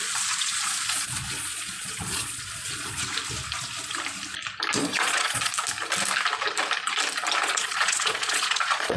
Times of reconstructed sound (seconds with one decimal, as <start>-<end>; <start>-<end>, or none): 0.0-3.0; 4.8-5.5; 7.4-9.0